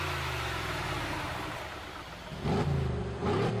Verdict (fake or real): real